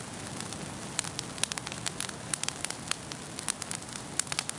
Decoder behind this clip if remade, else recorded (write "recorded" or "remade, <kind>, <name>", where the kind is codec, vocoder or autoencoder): recorded